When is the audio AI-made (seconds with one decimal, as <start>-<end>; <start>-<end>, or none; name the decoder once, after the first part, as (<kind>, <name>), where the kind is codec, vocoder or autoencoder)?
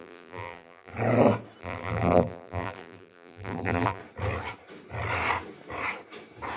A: 0.0-0.9 (vocoder, BigVGAN v2); 1.6-4.0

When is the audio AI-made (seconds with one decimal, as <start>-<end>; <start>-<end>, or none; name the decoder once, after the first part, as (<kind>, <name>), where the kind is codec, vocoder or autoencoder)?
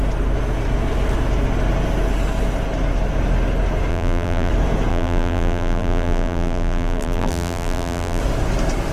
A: 3.9-4.5 (vocoder, BigVGAN v2); 4.9-8.2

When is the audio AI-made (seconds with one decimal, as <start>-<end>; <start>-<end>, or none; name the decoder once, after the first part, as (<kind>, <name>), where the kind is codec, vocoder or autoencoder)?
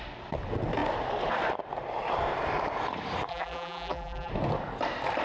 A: 3.3-4.3 (vocoder, BigVGAN v2)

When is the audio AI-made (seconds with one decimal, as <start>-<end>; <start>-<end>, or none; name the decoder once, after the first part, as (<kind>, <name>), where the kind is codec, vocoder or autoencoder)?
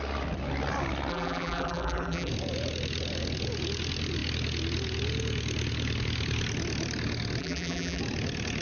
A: 1.1-2.3 (vocoder, BigVGAN v2); 7.4-8.0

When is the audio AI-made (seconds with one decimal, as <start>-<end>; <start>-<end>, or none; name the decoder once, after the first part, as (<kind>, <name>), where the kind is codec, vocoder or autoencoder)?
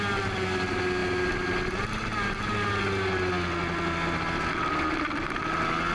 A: none